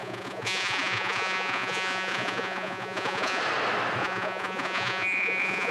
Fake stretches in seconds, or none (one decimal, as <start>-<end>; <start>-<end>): 0.0-3.4; 4.0-5.7